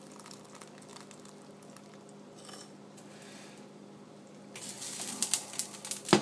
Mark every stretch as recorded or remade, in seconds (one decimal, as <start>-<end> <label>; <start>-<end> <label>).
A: 0.0-6.2 recorded